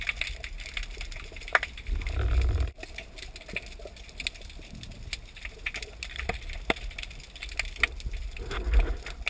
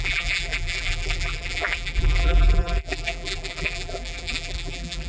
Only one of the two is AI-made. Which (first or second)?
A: second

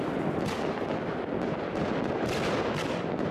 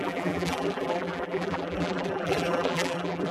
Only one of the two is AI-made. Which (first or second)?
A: second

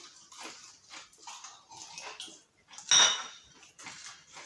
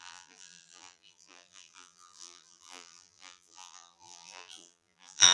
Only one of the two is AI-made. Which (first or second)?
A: second